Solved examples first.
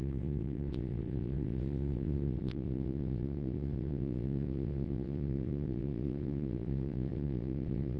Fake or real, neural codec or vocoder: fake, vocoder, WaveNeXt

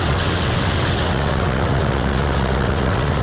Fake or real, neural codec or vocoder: fake, vocoder, WaveNeXt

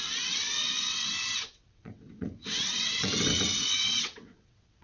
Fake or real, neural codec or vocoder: fake, vocoder, WaveNeXt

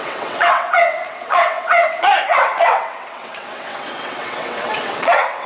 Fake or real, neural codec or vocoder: fake, vocoder, WaveNeXt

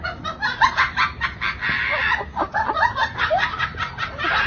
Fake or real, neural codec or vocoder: real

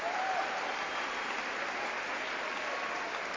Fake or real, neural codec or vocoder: real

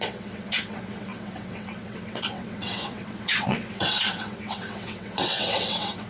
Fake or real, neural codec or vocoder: fake, vocoder, WaveNeXt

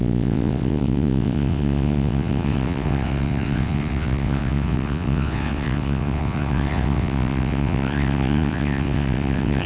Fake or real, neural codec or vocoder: fake, vocoder, WaveNeXt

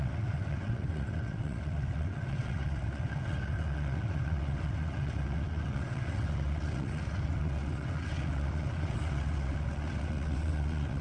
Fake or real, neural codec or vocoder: fake, vocoder, WaveNeXt